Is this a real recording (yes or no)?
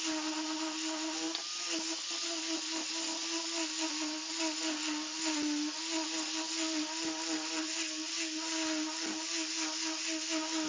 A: yes